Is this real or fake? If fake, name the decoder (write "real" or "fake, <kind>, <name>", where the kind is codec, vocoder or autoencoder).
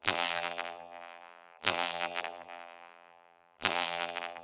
fake, vocoder, BigVGAN v2